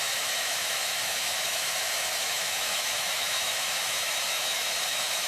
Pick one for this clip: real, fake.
fake